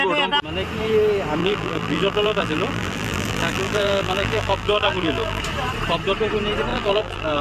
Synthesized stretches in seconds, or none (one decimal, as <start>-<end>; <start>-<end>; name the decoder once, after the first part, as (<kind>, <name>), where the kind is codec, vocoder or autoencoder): 1.4-5.4 (vocoder, BigVGAN v2); 6.7-7.4

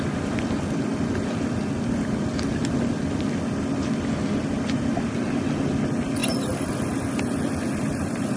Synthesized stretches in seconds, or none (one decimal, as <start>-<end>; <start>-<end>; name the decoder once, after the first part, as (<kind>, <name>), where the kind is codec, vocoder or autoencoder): none

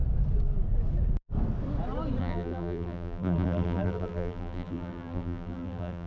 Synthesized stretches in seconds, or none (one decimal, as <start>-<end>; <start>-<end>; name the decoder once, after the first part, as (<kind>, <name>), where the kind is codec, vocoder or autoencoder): 2.2-6.1 (vocoder, BigVGAN v2)

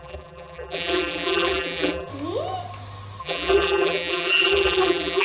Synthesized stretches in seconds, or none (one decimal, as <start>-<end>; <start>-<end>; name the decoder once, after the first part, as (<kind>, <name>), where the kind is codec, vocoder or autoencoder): 0.0-2.1 (vocoder, BigVGAN v2); 3.2-5.2

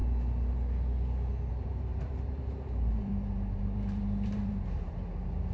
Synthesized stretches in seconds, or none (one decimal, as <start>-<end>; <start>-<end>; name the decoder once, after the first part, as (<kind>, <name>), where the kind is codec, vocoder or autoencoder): 1.5-5.5 (vocoder, BigVGAN v2)